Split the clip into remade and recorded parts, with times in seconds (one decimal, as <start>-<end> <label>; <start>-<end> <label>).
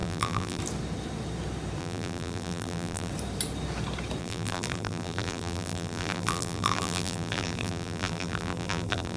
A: 0.0-0.6 remade; 0.6-1.8 recorded; 1.8-3.1 remade; 3.1-4.2 recorded; 4.2-9.2 remade